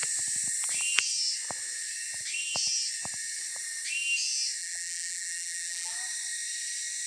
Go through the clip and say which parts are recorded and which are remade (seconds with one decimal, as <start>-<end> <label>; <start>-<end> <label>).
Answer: 0.0-4.6 recorded; 4.6-5.9 remade; 5.9-7.1 recorded